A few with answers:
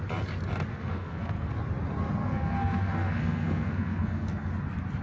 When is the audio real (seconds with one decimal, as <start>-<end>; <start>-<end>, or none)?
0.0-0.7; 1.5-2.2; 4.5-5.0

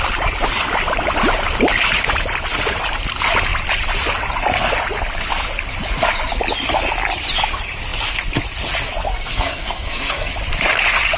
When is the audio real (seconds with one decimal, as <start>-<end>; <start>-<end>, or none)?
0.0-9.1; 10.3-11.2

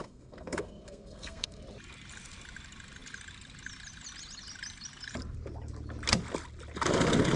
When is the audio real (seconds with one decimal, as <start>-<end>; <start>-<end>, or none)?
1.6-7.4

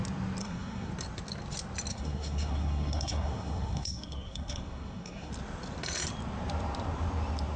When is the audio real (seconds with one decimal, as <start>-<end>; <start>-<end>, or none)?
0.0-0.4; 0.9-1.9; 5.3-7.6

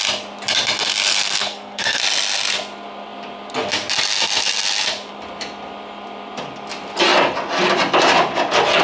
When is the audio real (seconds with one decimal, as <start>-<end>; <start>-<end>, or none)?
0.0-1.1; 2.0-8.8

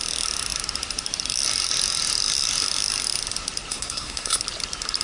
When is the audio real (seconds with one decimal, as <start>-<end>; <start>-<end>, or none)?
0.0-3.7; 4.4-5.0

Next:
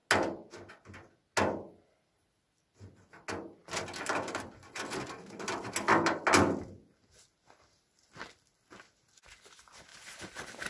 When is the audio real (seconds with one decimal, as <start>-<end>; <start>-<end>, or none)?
0.0-10.7

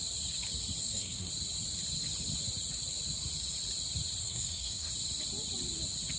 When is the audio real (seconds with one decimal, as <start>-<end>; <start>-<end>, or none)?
0.0-0.8; 1.3-4.2; 4.9-6.2